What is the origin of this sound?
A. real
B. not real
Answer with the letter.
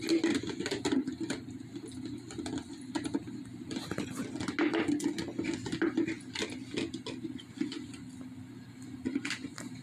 A